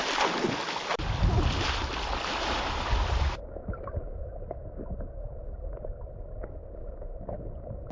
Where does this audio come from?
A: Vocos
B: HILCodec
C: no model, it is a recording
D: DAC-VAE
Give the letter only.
C